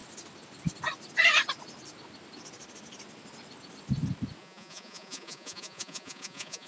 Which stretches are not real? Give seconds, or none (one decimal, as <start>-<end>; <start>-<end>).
4.4-6.7